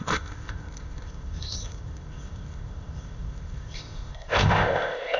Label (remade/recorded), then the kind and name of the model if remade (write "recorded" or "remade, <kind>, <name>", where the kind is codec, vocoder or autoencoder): remade, codec, ZipCodec